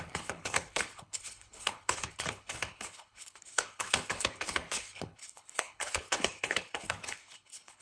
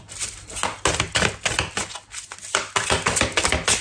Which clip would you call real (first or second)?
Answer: second